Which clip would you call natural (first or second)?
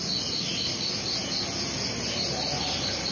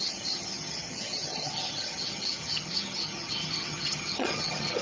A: first